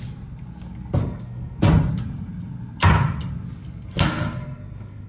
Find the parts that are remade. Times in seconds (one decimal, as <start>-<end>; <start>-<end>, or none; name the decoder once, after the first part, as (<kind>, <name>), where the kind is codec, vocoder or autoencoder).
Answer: 1.0-1.6 (codec, SNAC); 4.4-5.1

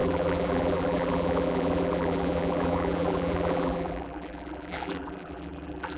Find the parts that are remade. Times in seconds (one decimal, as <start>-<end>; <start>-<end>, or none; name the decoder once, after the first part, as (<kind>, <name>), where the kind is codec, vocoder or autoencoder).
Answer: 0.0-6.0 (vocoder, BigVGAN v2)

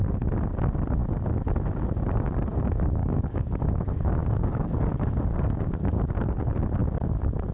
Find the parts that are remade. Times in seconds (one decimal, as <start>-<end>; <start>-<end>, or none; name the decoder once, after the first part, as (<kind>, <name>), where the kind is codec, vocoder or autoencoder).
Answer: 3.0-3.6 (codec, DAC); 4.2-5.9

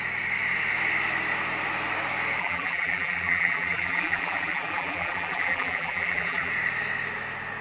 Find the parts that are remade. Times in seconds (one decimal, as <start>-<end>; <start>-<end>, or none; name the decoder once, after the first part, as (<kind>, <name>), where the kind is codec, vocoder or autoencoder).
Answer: 2.4-6.5 (vocoder, BigVGAN v2)

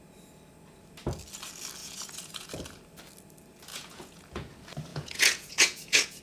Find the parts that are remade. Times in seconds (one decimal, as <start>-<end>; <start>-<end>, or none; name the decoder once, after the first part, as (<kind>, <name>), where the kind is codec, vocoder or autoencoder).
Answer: 1.8-2.5 (vocoder, Vocos); 3.7-4.5; 4.9-6.2